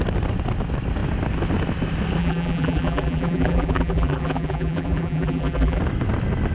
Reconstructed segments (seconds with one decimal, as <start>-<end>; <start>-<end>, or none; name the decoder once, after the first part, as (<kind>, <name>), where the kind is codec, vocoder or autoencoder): 2.2-5.8 (vocoder, BigVGAN v2)